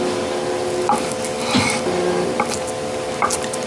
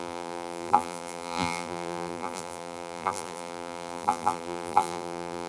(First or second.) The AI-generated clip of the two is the second